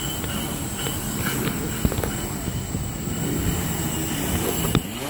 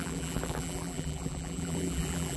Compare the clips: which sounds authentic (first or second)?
first